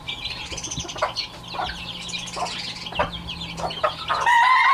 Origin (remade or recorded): recorded